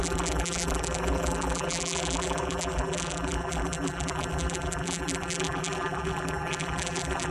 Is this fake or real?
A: fake